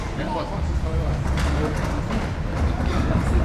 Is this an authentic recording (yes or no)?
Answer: no